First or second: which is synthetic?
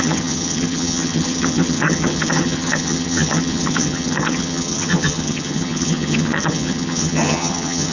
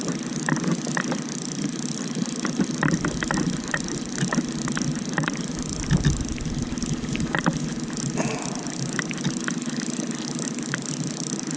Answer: first